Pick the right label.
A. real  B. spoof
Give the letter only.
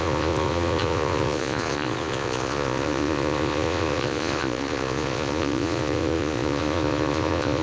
B